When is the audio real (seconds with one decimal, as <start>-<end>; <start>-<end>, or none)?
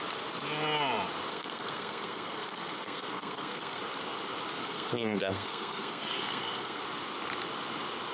0.0-1.3; 3.8-4.6; 6.8-8.1